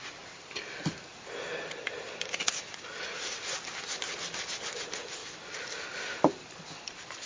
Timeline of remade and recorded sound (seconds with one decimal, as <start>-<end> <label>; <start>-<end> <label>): 0.0-7.3 recorded